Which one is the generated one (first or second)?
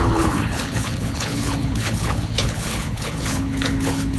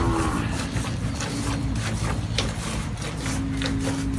first